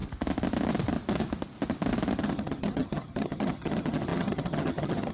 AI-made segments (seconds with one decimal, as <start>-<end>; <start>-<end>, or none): 2.2-5.1